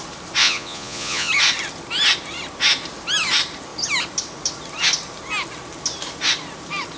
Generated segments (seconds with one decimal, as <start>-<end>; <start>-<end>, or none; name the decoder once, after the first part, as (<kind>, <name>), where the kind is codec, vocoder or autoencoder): 0.4-1.3 (vocoder, Vocos)